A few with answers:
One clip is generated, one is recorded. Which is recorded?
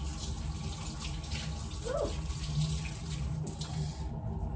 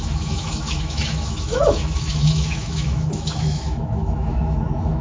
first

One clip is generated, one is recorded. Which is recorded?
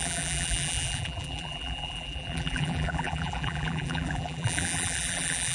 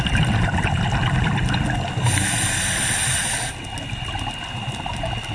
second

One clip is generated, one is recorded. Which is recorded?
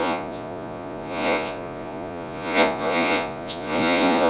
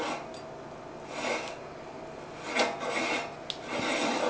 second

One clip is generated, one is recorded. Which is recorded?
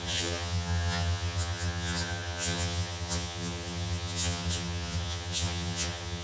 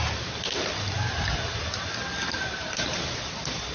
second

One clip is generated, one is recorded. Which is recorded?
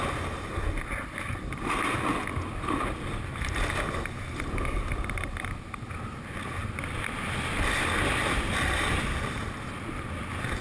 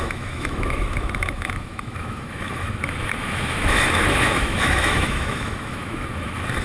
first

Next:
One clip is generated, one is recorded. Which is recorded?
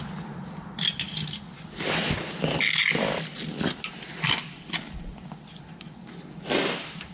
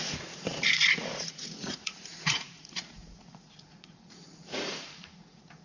first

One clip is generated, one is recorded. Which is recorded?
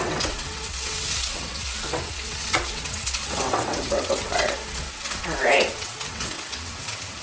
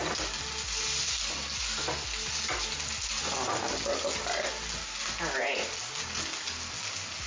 second